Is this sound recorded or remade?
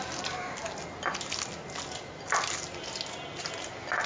recorded